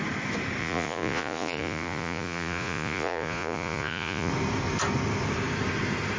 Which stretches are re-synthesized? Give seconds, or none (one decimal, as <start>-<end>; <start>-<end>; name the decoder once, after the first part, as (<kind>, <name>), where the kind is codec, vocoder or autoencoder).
0.6-4.3 (vocoder, Vocos)